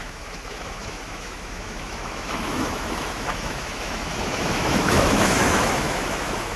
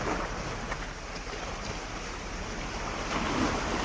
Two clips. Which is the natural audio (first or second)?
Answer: second